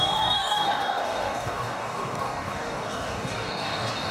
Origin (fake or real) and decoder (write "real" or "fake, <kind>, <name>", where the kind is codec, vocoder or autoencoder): fake, codec, DAC